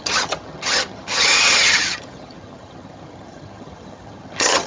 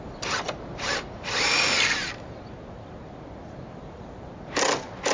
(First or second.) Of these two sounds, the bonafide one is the second